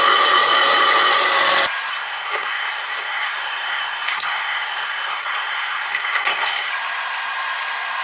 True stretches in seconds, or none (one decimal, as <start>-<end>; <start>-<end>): 0.0-1.9; 6.7-8.0